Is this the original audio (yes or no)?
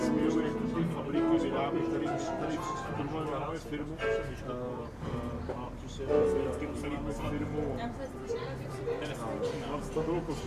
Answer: no